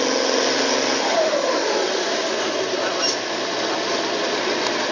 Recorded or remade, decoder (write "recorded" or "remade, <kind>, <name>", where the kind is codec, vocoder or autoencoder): recorded